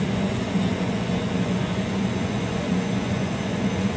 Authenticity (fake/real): fake